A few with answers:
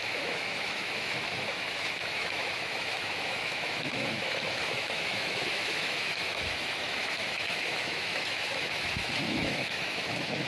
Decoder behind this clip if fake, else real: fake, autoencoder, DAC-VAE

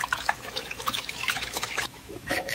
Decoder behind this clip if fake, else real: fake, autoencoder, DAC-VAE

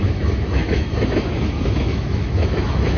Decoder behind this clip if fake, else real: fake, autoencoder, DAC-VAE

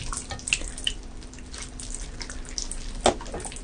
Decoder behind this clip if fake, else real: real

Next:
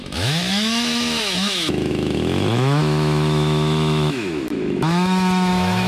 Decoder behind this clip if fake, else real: fake, autoencoder, DAC-VAE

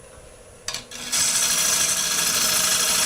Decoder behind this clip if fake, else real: real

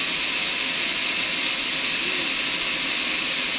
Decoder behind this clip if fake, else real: real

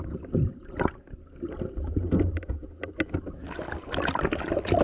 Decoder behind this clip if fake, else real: real